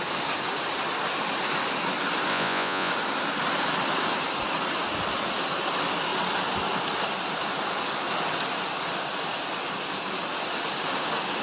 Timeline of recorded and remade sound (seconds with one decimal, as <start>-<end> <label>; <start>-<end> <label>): 0.0-2.3 recorded; 2.3-2.9 remade; 2.9-11.4 recorded